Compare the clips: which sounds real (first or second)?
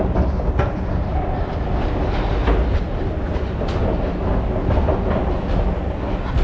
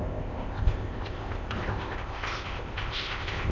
first